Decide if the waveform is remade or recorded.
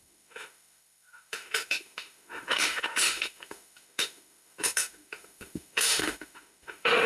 remade